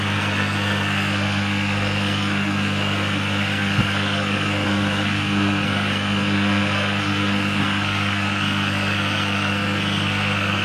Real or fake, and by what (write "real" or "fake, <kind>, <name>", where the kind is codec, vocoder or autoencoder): fake, codec, SNAC